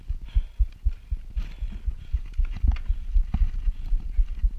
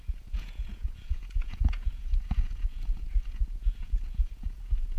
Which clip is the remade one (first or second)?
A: second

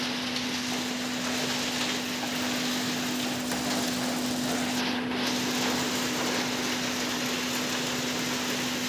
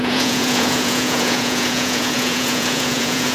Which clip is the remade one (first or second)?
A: second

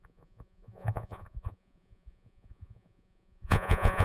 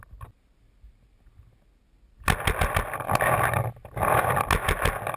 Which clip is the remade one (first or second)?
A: first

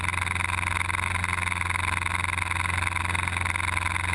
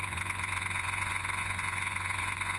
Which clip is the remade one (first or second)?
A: second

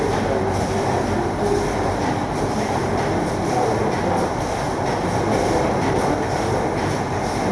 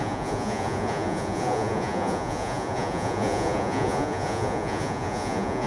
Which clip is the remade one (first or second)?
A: second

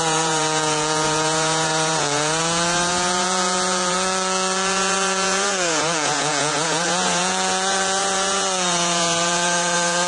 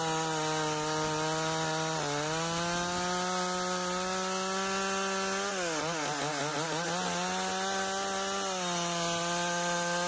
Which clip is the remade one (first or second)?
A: first